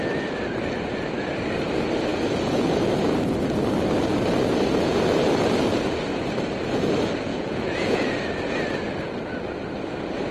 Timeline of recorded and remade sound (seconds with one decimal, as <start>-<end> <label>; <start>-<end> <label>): 0.0-2.1 recorded; 2.1-3.0 remade; 3.0-7.3 recorded; 7.3-8.5 remade; 8.5-10.3 recorded